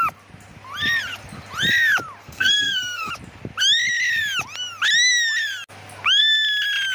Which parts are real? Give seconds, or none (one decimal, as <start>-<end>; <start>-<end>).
0.0-2.2; 3.1-6.9